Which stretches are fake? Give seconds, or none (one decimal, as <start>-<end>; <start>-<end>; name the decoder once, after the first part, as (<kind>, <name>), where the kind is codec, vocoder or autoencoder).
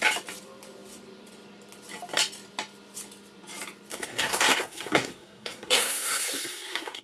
3.9-7.0 (codec, SNAC)